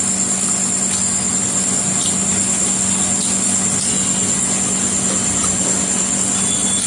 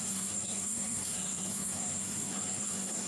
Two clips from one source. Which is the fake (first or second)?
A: second